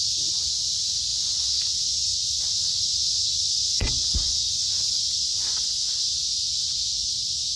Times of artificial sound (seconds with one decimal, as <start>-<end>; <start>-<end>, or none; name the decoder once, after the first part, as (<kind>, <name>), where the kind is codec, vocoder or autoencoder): 1.1-2.4 (vocoder, Vocos); 3.4-6.0